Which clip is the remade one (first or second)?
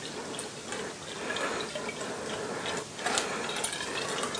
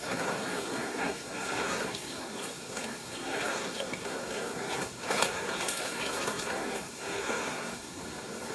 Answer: second